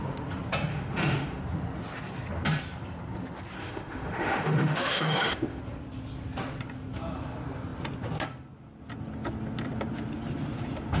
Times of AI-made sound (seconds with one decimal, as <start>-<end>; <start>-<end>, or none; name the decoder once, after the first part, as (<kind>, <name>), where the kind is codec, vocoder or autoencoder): 0.7-1.4 (autoencoder, DAC-VAE); 3.6-5.6